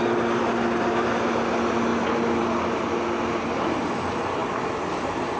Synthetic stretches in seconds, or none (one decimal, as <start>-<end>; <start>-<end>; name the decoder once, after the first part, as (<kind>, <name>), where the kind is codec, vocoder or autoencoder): none